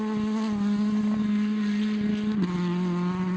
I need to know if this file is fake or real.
real